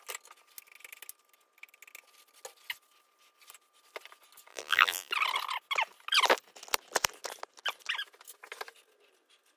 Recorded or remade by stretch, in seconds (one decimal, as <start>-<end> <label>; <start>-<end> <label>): 0.0-4.5 recorded; 4.5-5.1 remade; 5.1-9.6 recorded